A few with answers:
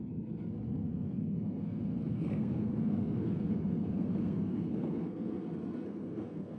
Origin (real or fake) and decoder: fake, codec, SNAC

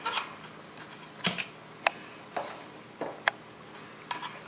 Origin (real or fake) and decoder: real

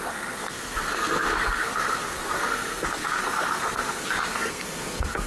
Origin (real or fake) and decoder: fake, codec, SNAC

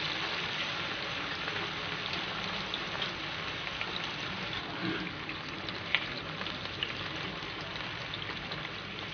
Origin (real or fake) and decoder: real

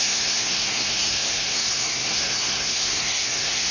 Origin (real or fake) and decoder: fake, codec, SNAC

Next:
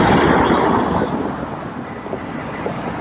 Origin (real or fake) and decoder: real